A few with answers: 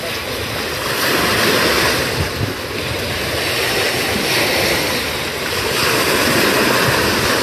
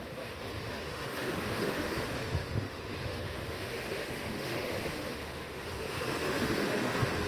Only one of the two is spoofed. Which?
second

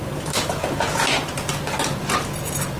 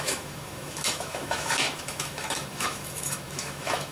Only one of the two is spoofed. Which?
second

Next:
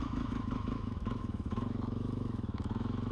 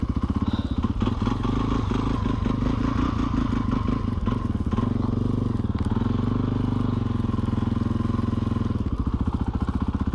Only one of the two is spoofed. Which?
first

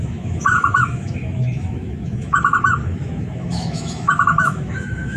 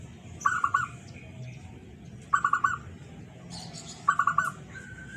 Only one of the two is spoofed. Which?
first